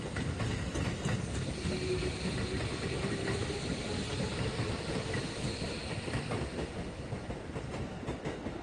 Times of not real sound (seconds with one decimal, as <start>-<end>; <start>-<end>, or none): 4.3-6.4